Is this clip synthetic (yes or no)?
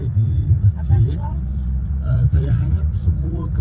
yes